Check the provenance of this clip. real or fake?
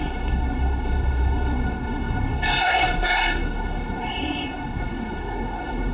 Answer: fake